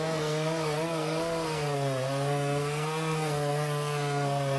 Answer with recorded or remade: remade